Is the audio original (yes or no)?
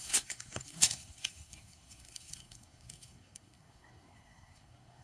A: no